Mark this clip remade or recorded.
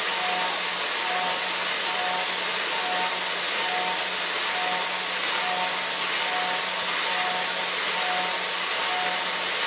recorded